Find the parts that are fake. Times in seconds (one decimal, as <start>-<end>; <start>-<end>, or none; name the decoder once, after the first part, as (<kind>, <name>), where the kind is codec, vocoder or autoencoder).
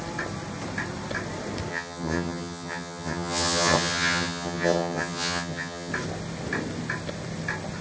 1.7-5.9 (vocoder, HiFi-GAN)